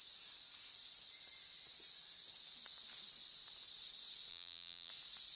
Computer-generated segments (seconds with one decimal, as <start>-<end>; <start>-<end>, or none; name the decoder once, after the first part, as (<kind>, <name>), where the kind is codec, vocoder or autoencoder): 4.3-4.9 (vocoder, BigVGAN v2)